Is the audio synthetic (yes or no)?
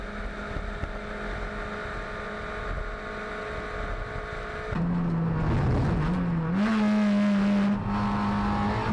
no